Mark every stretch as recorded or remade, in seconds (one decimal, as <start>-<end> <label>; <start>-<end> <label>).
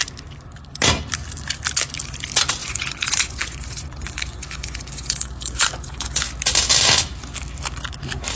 0.0-2.6 recorded; 2.6-6.2 remade; 6.2-8.4 recorded